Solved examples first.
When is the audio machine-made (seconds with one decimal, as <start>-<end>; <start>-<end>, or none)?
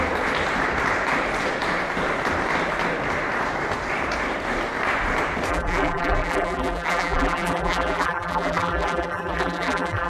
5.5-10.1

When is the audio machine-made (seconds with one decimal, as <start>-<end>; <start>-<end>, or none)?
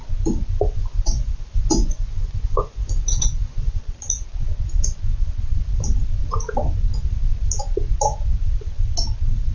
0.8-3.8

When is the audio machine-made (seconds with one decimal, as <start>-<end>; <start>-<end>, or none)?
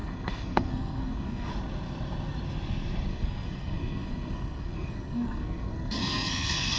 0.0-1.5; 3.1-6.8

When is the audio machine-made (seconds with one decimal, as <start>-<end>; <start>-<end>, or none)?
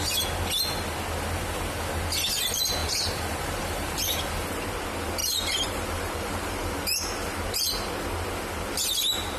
2.8-4.2; 5.2-6.7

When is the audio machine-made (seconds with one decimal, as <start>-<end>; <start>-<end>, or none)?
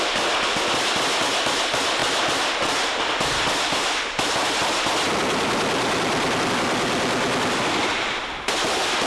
none